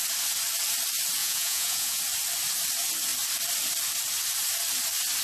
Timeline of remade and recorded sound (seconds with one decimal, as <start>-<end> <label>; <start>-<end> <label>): 0.0-1.2 recorded; 1.2-2.0 remade; 2.0-5.2 recorded